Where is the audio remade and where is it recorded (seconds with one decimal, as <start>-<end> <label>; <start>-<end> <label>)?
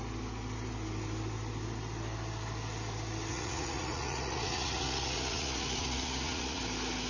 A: 0.0-3.3 recorded; 3.3-6.6 remade; 6.6-7.1 recorded